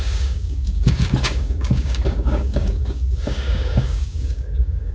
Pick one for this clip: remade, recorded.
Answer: remade